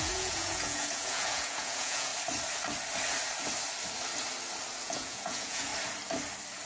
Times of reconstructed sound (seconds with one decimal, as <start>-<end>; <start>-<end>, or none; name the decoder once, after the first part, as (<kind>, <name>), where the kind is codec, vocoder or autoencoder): 0.0-2.1 (vocoder, Vocos); 4.8-5.7